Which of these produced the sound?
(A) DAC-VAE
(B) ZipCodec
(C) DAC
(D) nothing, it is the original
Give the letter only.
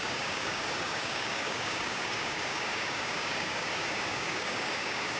C